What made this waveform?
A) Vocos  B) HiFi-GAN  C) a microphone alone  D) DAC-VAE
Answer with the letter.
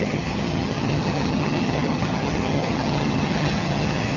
B